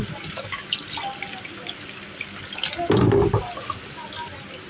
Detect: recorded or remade recorded